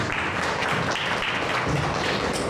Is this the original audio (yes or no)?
yes